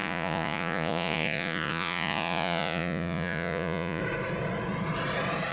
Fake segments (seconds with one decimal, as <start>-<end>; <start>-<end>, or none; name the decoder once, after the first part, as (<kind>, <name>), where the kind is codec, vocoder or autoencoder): 0.0-4.0 (vocoder, Vocos)